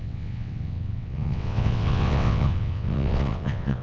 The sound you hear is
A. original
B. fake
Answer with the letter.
B